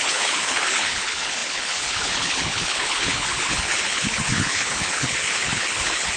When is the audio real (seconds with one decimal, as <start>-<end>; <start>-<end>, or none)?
none